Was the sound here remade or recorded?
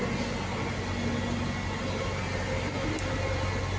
recorded